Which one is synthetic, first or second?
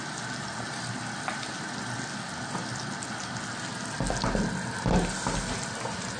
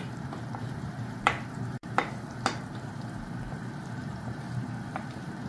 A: second